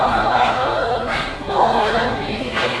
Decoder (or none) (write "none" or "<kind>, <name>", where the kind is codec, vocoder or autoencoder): codec, SNAC